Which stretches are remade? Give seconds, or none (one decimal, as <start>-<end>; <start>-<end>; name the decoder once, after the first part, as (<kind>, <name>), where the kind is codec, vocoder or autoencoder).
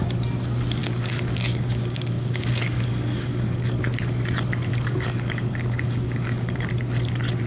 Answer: 0.8-3.8 (codec, DAC); 4.7-6.7